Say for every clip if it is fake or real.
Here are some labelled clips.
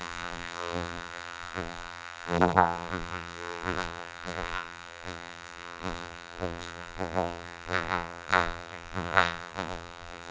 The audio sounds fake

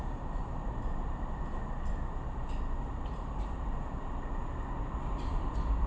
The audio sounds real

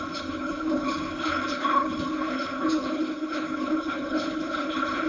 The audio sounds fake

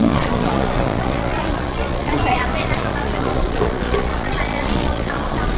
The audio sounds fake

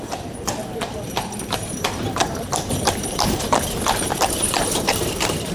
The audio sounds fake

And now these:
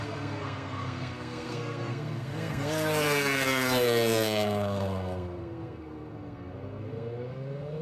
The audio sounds fake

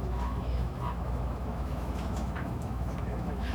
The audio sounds fake